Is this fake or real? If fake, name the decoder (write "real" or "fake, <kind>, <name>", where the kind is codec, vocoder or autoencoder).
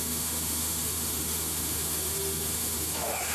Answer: fake, autoencoder, DAC-VAE